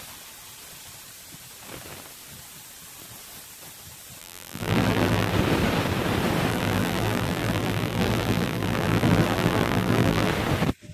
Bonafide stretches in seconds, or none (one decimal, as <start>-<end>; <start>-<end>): 0.0-4.2; 5.3-6.5; 10.3-10.9

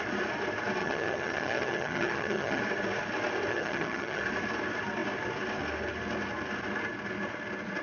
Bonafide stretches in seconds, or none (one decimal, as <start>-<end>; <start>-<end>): 0.0-0.8; 2.6-3.5; 4.2-7.8

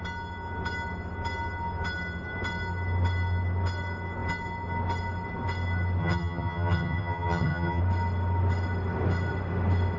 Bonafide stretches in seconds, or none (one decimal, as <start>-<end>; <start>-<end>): 0.0-6.0; 7.8-10.0

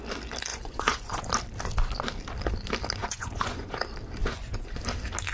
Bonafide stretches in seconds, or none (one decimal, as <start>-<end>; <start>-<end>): 0.0-0.5; 1.3-3.0; 3.8-4.2; 4.8-5.3